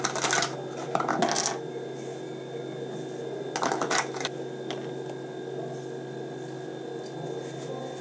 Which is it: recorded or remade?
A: recorded